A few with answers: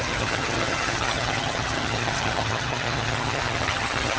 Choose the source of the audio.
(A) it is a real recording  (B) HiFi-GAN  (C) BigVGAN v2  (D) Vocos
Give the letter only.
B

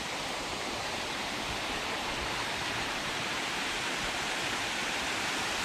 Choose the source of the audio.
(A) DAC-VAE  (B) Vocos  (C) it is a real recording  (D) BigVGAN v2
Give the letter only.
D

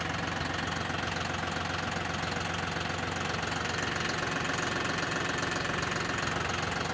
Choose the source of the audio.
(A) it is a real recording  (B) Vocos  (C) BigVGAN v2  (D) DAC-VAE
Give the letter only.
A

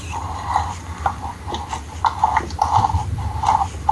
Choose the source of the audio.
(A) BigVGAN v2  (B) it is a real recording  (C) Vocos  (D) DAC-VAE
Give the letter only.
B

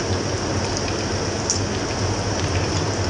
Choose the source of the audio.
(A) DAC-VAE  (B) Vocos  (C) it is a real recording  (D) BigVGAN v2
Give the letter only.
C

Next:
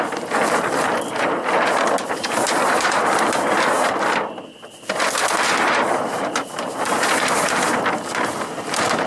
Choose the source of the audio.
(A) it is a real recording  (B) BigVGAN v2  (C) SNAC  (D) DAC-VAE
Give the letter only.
A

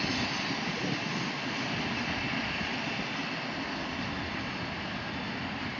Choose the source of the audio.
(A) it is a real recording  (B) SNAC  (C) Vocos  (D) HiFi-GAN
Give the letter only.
A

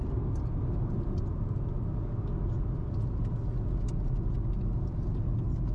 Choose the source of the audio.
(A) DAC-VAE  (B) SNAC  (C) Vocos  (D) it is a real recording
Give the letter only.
D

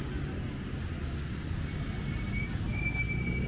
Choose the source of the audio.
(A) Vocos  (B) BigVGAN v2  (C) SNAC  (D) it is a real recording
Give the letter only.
D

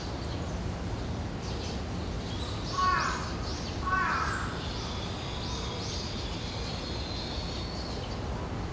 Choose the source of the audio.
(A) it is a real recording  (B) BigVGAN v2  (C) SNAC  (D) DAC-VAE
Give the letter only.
A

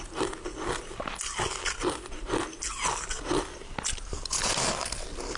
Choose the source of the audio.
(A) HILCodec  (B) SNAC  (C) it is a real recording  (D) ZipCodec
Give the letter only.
C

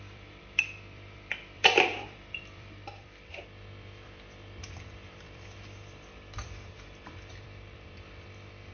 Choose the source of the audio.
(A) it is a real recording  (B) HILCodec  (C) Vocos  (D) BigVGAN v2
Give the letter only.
D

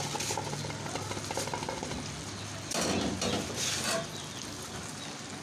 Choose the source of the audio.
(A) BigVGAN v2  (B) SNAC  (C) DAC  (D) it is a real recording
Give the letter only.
D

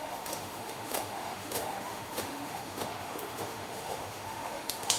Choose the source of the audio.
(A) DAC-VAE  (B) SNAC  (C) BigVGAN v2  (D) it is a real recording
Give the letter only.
A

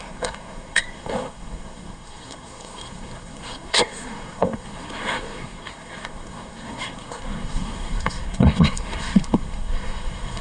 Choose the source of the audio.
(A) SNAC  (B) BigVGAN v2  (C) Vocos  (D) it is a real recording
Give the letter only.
A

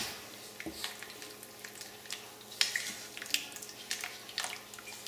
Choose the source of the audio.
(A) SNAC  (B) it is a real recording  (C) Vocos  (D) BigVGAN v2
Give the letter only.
B